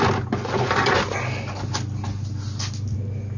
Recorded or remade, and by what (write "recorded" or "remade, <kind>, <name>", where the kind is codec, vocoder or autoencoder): recorded